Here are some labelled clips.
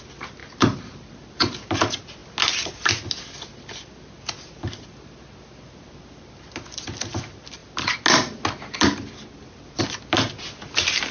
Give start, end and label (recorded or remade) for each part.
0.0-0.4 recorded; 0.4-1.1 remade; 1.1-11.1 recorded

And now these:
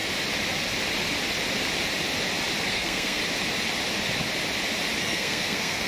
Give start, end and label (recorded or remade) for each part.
0.0-2.7 recorded; 2.7-3.2 remade; 3.2-5.0 recorded; 5.0-5.9 remade

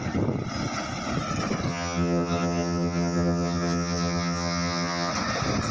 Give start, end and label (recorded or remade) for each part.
0.0-1.7 recorded; 1.7-5.1 remade; 5.1-5.7 recorded